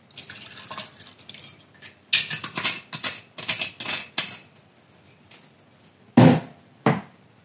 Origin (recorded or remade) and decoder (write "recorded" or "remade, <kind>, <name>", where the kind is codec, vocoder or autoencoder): recorded